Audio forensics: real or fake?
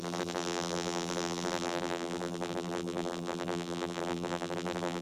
fake